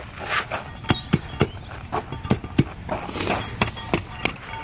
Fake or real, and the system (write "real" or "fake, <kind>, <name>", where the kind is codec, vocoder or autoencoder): real